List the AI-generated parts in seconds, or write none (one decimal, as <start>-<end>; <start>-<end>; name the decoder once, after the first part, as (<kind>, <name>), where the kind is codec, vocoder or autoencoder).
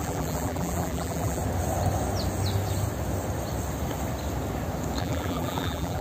0.0-1.4 (vocoder, BigVGAN v2); 5.0-6.0